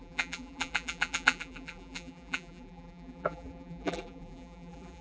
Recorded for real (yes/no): no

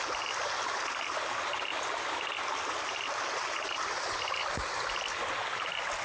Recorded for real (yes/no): yes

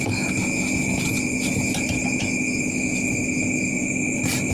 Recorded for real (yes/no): yes